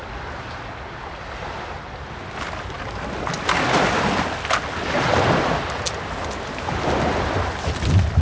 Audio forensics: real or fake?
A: real